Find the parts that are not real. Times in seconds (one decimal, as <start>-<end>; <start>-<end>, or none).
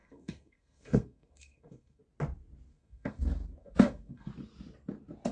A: 0.0-2.0; 2.7-3.2; 3.6-4.3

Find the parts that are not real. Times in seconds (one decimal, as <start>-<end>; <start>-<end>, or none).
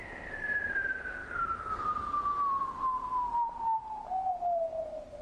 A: none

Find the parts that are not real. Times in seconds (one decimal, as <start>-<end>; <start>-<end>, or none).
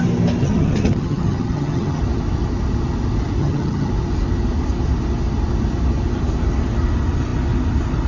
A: 0.4-2.0; 3.4-3.9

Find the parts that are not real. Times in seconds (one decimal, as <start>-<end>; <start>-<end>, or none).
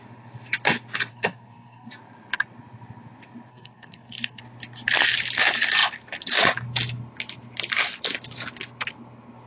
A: 1.1-1.9; 3.5-4.4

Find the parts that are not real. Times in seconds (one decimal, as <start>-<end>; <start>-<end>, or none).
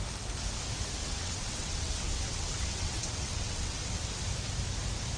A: 1.0-3.8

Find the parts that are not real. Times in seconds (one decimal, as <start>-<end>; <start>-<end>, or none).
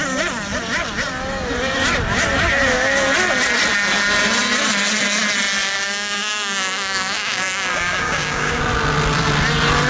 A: 5.6-8.6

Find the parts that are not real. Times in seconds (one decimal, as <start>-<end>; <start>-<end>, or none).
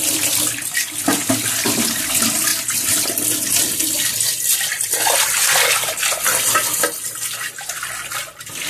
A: none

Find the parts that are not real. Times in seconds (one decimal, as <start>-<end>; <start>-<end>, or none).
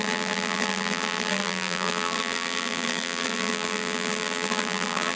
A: 0.0-5.2